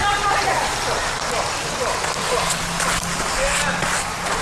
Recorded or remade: recorded